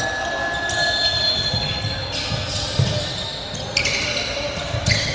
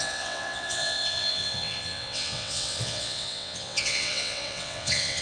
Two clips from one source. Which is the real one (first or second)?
first